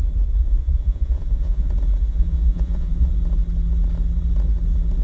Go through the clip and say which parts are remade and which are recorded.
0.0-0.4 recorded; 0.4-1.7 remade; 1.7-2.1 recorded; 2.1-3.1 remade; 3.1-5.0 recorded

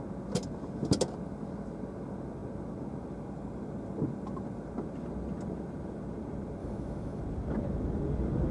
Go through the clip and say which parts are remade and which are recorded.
0.0-6.6 recorded; 6.6-7.2 remade; 7.2-8.5 recorded

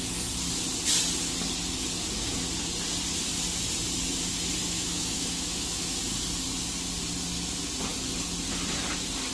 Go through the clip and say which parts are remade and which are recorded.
0.0-4.6 recorded; 4.6-6.0 remade; 6.0-9.3 recorded

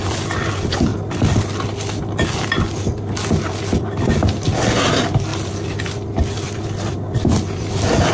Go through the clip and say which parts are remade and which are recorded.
0.0-8.1 recorded